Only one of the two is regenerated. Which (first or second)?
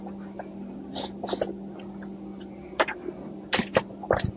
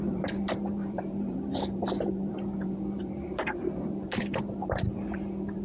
second